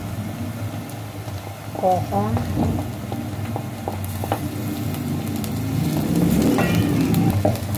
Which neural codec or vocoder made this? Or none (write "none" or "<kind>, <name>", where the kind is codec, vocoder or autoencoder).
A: none